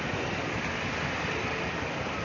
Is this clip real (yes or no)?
yes